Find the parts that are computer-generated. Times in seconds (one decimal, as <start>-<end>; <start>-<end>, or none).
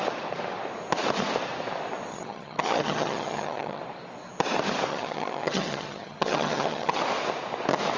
2.1-3.8; 4.9-7.0